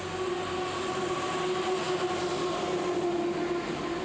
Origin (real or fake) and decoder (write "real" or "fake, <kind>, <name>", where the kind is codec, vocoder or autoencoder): real